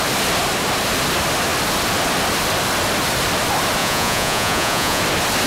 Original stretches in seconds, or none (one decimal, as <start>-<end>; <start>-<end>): 0.0-3.8; 5.0-5.5